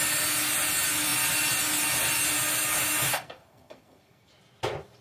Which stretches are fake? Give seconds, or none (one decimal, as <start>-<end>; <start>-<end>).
3.1-4.3